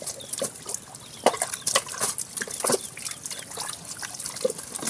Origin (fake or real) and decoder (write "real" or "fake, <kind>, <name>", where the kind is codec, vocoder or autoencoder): real